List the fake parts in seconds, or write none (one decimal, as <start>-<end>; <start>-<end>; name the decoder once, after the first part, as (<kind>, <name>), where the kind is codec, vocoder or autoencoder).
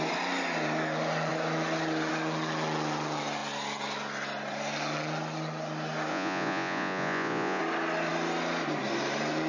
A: 6.1-7.6 (vocoder, Vocos)